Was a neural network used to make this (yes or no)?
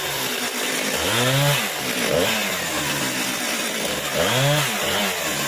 no